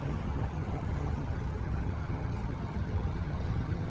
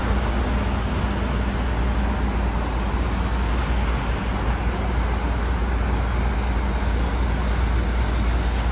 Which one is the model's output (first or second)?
first